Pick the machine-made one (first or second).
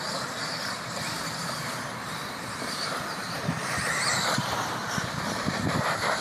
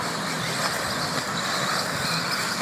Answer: first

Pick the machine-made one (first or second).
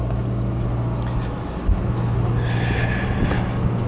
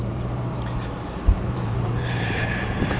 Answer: second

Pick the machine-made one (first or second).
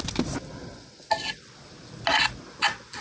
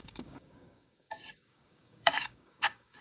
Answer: second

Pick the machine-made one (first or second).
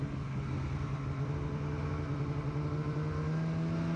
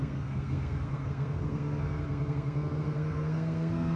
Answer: second